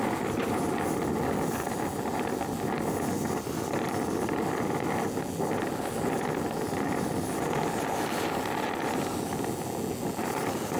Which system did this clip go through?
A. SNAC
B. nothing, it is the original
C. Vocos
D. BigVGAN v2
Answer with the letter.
B